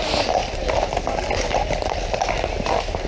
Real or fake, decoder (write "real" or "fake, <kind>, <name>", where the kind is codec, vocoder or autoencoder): real